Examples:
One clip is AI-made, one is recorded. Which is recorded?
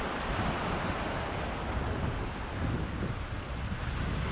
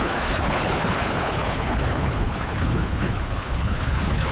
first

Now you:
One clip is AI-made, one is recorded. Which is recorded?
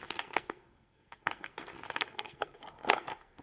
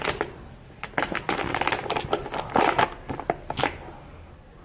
second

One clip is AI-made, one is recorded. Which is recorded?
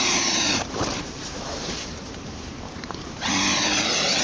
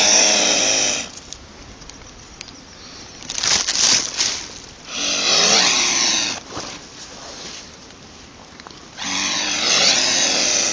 second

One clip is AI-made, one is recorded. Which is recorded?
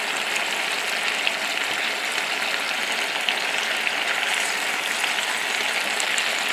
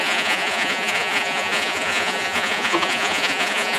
first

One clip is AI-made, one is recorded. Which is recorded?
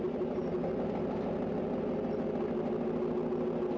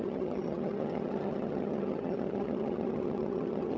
first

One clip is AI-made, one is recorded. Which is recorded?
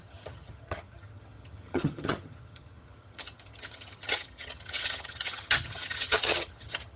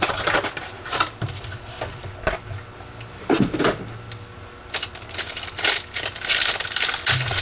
second